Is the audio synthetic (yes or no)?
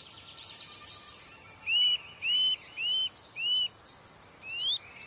no